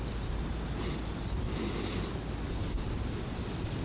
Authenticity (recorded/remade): recorded